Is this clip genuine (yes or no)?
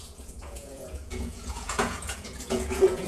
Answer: no